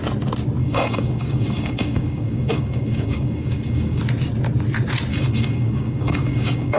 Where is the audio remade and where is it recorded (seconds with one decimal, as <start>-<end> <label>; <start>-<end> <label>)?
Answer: 0.0-0.6 recorded; 0.6-4.0 remade; 4.0-5.1 recorded; 5.1-6.8 remade